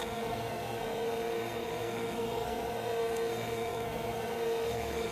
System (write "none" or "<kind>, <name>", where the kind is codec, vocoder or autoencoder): codec, SNAC